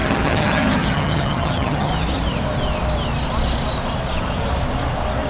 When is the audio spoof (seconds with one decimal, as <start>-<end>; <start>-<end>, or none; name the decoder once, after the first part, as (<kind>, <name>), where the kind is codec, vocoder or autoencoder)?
0.0-1.9 (vocoder, HiFi-GAN)